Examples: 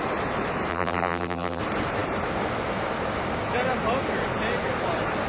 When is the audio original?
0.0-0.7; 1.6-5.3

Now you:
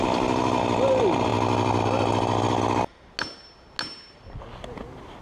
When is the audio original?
0.0-5.2

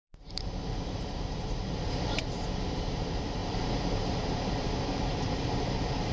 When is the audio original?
none

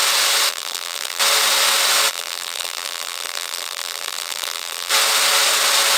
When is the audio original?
0.0-0.5; 1.2-2.1; 4.9-6.0

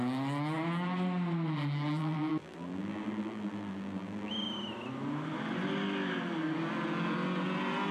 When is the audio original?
0.0-2.0; 4.3-7.9